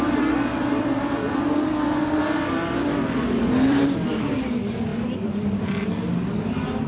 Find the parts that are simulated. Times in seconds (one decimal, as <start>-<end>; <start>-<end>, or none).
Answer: 0.5-1.7; 2.2-4.3; 4.9-6.3